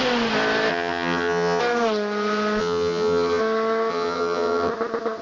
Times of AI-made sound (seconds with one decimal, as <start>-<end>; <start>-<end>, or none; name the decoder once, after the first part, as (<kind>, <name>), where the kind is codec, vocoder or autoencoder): 0.7-1.6 (vocoder, HiFi-GAN); 2.6-3.4; 3.9-4.7